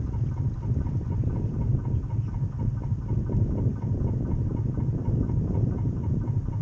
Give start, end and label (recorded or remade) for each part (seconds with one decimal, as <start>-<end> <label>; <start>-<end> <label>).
0.0-6.6 recorded